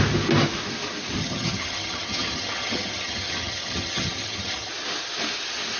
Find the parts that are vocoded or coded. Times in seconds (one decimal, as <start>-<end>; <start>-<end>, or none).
1.2-4.7